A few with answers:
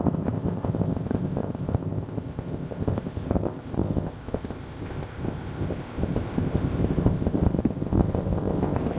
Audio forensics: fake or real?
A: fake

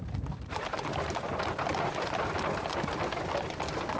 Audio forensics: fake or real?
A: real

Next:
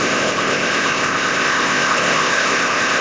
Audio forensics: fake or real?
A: fake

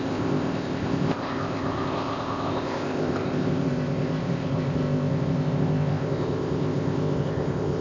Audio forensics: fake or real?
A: fake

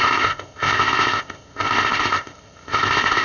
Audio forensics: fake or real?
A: fake